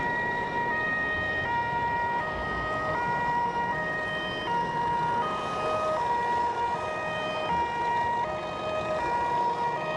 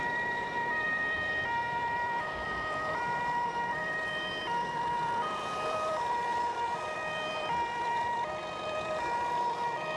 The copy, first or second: second